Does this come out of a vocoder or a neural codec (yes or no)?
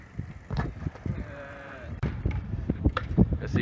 yes